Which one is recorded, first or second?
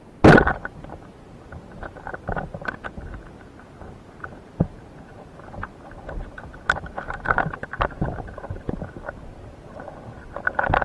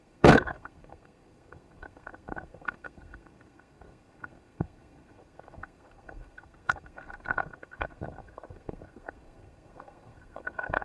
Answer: first